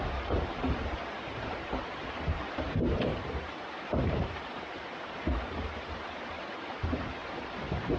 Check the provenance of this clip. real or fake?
fake